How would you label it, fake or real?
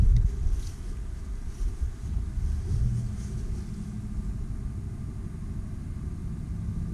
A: real